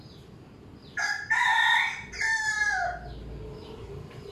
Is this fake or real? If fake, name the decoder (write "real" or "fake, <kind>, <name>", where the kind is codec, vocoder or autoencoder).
real